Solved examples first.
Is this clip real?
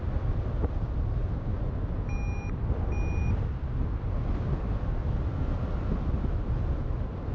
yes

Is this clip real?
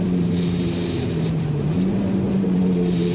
no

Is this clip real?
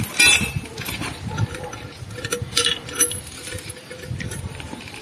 no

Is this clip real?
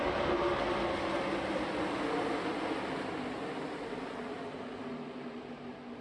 yes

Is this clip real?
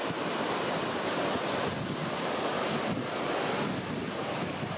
no